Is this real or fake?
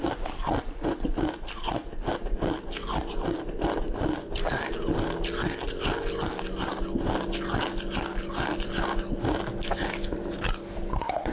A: real